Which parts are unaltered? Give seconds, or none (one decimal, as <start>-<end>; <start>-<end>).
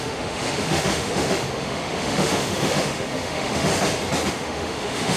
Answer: 3.7-4.3